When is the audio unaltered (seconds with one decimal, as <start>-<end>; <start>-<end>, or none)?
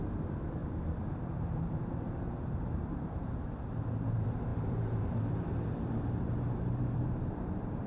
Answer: none